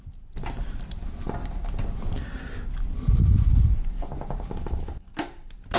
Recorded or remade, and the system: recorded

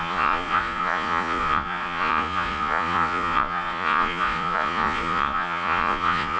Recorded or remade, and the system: remade, vocoder, Vocos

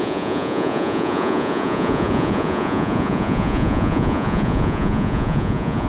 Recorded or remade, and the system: remade, vocoder, Vocos